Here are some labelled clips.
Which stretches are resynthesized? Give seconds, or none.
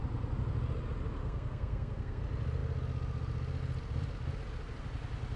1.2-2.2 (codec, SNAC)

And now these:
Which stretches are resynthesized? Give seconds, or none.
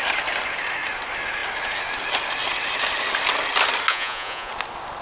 3.9-4.5 (vocoder, Vocos)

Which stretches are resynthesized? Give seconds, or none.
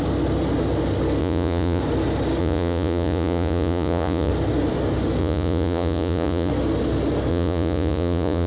1.2-1.8 (vocoder, Vocos); 2.4-4.3; 5.2-6.5; 7.3-8.5